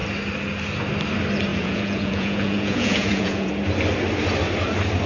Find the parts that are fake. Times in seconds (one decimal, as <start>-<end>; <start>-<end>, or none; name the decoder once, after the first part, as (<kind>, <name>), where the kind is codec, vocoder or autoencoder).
1.5-3.5 (vocoder, Vocos)